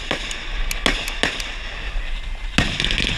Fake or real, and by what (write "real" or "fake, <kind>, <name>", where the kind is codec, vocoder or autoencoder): real